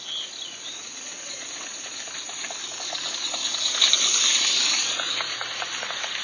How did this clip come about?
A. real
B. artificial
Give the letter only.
A